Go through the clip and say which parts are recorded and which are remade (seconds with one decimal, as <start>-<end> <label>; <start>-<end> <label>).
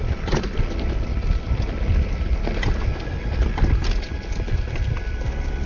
0.0-5.7 recorded